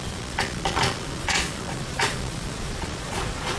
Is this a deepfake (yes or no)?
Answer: yes